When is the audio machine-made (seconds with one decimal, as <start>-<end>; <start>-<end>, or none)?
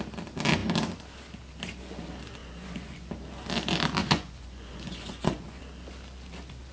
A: 2.4-3.1; 4.0-5.6